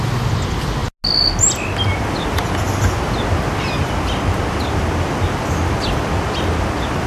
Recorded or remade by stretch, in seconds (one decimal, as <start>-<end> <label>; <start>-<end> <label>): 0.0-7.1 recorded